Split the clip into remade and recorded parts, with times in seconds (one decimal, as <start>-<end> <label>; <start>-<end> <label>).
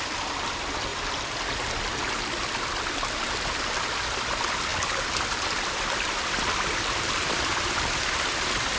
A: 0.0-4.7 recorded; 4.7-8.8 remade